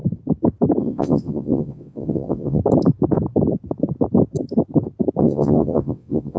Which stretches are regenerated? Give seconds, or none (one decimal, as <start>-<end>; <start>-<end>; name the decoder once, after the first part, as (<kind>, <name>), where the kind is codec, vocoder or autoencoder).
0.8-2.6 (vocoder, WaveNeXt); 5.2-6.4